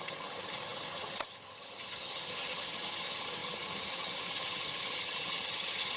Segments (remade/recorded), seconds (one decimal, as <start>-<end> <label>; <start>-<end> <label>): 0.0-6.0 remade